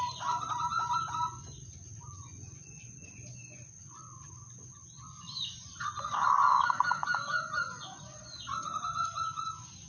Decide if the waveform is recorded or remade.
remade